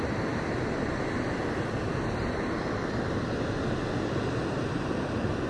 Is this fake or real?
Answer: real